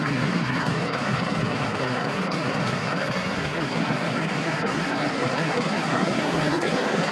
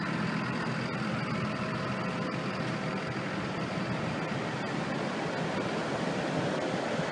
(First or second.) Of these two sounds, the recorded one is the second